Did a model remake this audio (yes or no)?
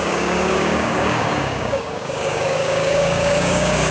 yes